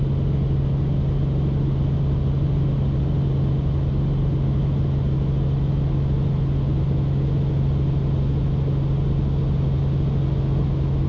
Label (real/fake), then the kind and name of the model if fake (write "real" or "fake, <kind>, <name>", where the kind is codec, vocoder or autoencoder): real